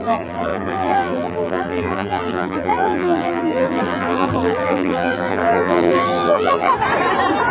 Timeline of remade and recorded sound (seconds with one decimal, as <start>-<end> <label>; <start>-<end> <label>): 0.0-6.7 remade; 6.7-7.5 recorded